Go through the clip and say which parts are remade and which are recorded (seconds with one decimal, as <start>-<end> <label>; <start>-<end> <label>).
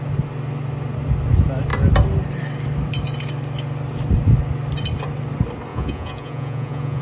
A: 0.0-5.7 recorded; 5.7-7.0 remade